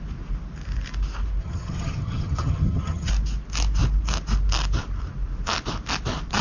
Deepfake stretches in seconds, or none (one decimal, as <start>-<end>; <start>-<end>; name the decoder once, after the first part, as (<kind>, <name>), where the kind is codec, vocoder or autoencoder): 1.4-3.1 (vocoder, HiFi-GAN)